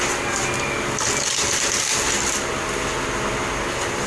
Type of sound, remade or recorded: recorded